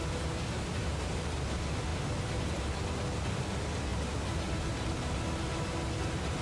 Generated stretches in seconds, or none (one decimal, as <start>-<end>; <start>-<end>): none